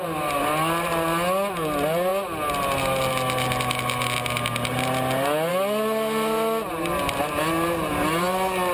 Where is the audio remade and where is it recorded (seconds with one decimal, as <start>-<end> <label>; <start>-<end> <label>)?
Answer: 0.0-8.7 recorded